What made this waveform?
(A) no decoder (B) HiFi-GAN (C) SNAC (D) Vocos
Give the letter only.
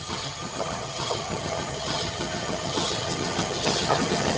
B